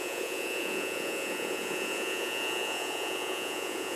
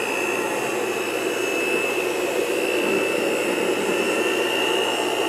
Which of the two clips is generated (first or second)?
first